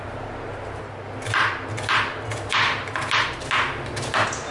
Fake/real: real